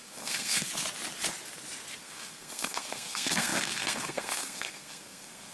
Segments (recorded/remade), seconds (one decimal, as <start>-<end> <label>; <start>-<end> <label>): 0.0-0.7 remade; 0.7-2.0 recorded; 2.0-5.5 remade